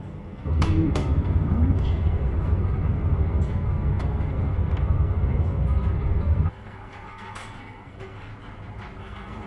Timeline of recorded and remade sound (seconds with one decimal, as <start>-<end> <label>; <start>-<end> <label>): 0.0-8.3 remade; 8.3-9.0 recorded; 9.0-9.5 remade